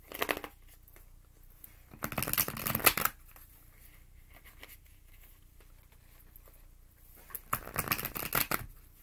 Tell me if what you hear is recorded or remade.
recorded